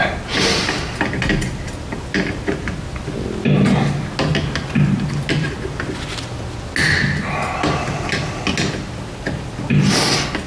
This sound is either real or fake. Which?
real